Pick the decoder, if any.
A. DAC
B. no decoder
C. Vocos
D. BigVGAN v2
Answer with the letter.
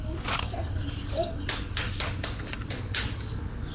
A